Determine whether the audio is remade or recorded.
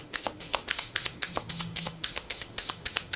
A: remade